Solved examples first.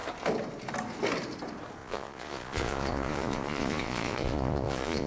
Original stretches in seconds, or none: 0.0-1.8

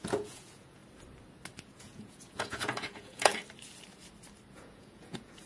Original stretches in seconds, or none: 0.8-1.7; 3.3-4.5

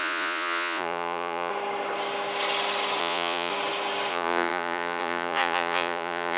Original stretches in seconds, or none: 1.5-3.0; 3.5-4.1

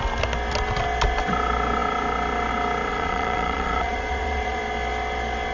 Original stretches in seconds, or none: 0.0-2.9; 4.6-5.5

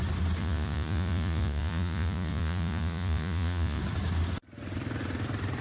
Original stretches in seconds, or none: 0.0-0.4; 3.8-5.6